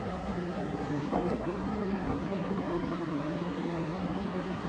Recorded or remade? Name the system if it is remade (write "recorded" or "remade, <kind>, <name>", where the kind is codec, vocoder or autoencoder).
remade, codec, SNAC